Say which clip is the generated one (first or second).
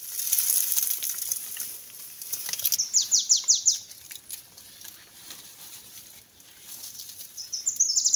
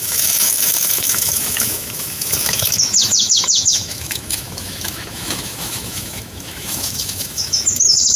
second